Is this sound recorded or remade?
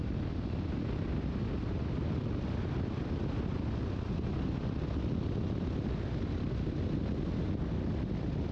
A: recorded